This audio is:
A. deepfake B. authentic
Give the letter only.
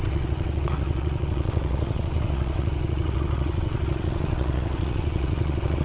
A